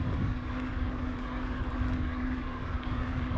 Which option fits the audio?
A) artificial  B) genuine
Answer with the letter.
A